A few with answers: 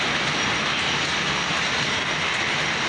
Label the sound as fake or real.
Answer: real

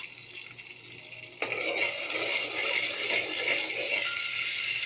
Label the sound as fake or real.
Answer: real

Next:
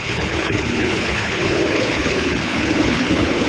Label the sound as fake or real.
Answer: fake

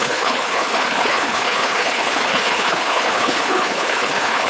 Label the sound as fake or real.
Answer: fake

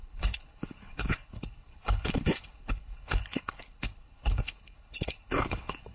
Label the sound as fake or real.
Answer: fake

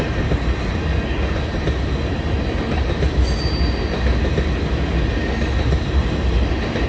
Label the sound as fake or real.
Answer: real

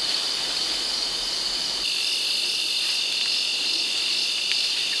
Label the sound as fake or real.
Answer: real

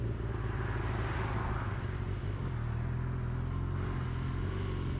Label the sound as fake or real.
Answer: real